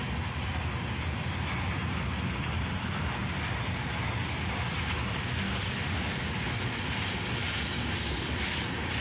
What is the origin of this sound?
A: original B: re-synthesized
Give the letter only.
A